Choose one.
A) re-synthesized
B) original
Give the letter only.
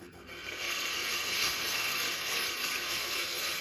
A